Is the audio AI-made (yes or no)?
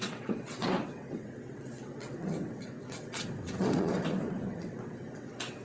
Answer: yes